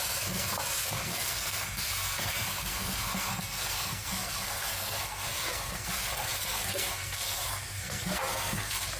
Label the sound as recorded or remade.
remade